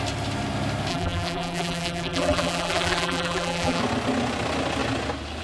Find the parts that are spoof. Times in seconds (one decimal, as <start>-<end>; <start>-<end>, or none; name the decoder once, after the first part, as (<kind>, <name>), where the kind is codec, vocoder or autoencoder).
0.9-3.8 (vocoder, BigVGAN v2)